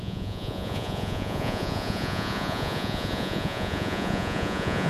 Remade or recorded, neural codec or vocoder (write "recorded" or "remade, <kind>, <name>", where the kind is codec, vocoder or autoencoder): remade, vocoder, Vocos